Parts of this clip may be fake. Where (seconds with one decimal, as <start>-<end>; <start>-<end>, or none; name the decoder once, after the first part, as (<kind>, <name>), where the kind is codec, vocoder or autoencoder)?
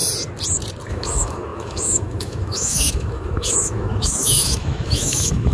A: 0.9-5.5 (autoencoder, DAC-VAE)